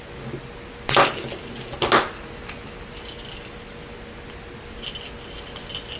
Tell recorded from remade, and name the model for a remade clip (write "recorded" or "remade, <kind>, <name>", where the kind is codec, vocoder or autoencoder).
recorded